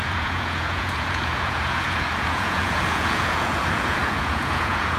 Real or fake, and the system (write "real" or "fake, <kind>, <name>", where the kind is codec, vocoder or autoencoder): fake, vocoder, Vocos